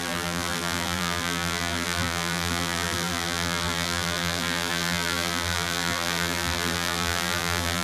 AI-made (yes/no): yes